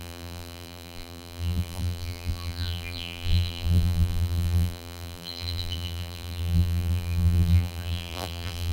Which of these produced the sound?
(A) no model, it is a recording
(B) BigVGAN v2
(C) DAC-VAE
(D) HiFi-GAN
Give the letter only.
B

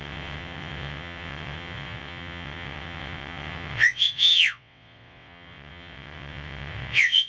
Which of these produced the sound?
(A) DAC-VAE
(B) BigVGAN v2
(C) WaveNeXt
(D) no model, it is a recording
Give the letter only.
C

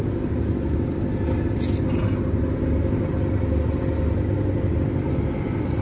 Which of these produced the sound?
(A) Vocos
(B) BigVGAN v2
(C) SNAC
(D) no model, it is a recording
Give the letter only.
D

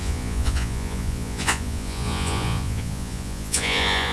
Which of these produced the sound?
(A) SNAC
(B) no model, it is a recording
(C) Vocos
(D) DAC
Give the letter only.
C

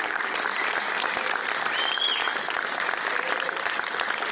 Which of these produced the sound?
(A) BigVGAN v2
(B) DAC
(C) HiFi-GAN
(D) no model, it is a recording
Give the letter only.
D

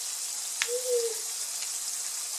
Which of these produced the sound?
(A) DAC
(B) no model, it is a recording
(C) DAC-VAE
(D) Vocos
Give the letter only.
B